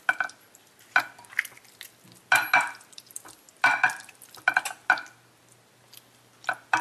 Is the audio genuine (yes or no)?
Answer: yes